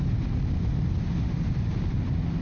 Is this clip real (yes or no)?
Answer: yes